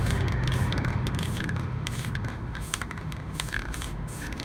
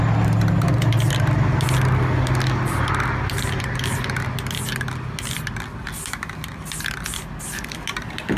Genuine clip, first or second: second